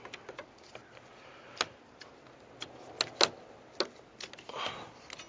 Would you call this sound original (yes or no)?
yes